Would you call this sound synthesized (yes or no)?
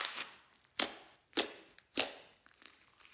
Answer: no